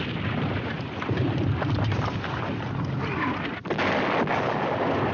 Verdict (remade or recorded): recorded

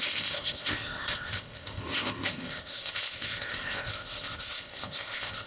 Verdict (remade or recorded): remade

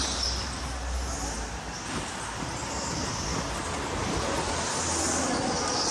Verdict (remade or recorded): recorded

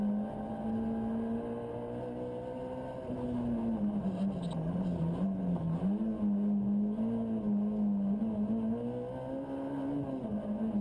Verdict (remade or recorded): recorded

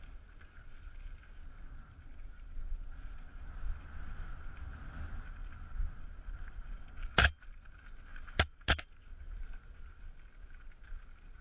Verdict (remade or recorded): recorded